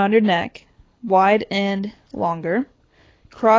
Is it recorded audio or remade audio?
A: remade